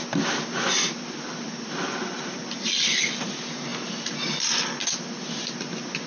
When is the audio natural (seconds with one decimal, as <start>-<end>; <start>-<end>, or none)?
0.0-6.1